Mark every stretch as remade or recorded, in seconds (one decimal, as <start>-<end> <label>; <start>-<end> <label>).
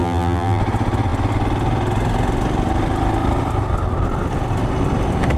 0.0-0.6 remade; 0.6-5.4 recorded